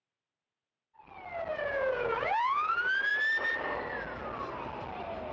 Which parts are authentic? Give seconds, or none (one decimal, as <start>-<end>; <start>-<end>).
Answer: 0.0-1.5; 2.7-5.3

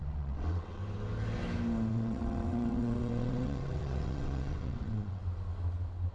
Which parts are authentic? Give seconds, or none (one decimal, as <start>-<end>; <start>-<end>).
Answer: 0.8-1.9; 5.2-6.1